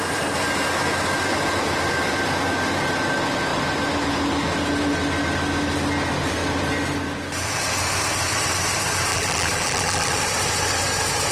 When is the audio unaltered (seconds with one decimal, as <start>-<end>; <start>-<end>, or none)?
0.0-9.1; 10.2-11.3